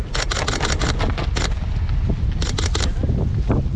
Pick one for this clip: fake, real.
real